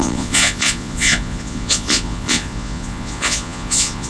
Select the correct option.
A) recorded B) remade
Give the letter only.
B